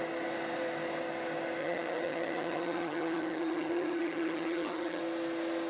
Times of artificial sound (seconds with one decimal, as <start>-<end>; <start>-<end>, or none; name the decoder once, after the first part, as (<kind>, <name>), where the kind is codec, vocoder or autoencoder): 1.6-5.0 (vocoder, HiFi-GAN)